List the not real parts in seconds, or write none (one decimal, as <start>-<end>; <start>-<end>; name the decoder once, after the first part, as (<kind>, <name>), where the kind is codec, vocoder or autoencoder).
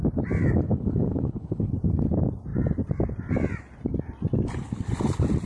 0.6-1.7 (codec, HILCodec)